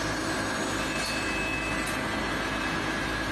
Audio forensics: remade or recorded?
recorded